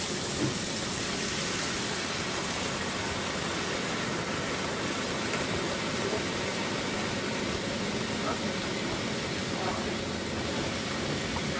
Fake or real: real